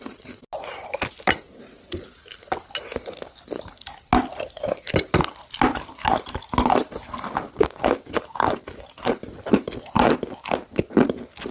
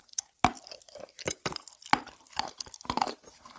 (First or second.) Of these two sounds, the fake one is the second